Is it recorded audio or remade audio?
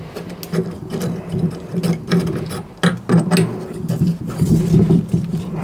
recorded